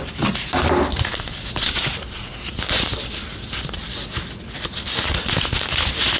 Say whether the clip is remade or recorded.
recorded